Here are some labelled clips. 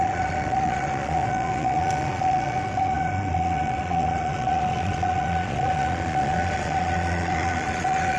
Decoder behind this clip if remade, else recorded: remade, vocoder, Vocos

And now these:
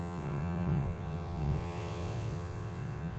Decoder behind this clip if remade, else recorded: remade, vocoder, WaveNeXt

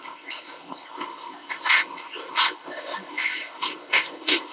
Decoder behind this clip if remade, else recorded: remade, codec, ZipCodec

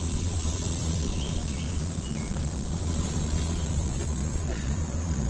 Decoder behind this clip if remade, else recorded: remade, vocoder, Vocos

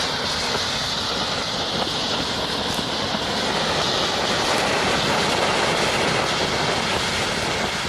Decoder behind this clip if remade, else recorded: recorded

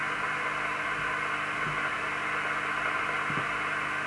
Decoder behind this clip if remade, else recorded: recorded